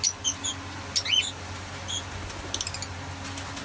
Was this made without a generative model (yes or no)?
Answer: yes